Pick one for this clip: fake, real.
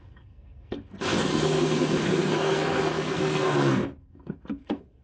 fake